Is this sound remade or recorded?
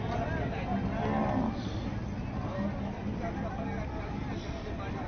recorded